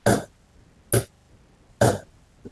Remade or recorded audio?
recorded